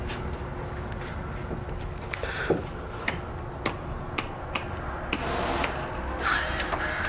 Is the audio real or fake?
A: real